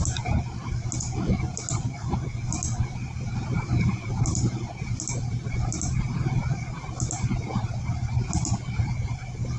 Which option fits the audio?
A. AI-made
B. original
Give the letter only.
B